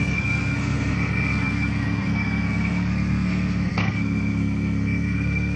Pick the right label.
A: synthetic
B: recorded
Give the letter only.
A